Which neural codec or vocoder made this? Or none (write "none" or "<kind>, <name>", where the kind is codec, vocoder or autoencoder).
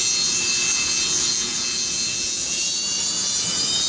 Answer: vocoder, Vocos